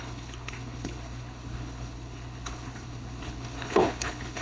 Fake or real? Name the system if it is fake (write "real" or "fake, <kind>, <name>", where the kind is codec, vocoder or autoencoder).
fake, codec, HILCodec